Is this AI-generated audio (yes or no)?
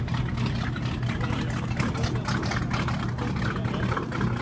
no